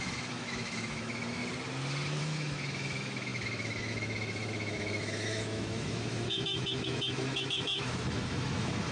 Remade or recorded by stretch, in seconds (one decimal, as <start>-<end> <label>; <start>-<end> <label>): 0.0-1.4 remade; 1.4-2.2 recorded; 2.2-8.9 remade